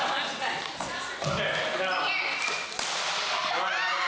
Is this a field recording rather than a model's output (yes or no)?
yes